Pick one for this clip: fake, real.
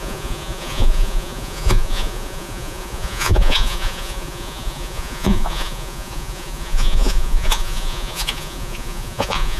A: fake